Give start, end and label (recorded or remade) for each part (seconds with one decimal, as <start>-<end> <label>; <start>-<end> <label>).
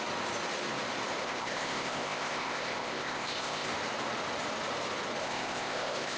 0.0-1.2 recorded; 1.2-3.7 remade; 3.7-5.2 recorded; 5.2-6.2 remade